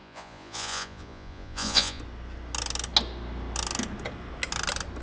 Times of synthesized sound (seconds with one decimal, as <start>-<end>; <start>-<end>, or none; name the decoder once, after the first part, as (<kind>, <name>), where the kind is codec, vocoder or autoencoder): 0.0-2.0 (vocoder, Vocos)